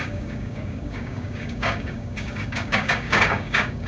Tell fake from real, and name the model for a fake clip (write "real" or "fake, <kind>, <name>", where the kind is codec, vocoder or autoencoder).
fake, codec, DAC